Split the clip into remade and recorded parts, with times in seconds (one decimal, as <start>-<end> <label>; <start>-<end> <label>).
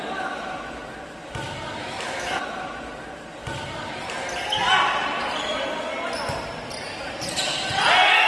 0.0-1.8 recorded; 1.8-2.3 remade; 2.3-8.3 recorded